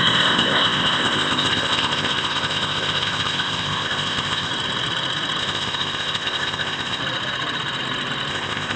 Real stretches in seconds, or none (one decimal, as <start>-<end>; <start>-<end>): 4.5-5.4; 7.0-8.3